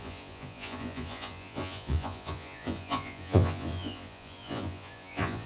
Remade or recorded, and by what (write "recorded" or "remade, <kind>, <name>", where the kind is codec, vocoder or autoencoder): remade, vocoder, Vocos